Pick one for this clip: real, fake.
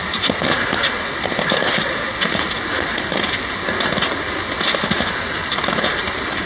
real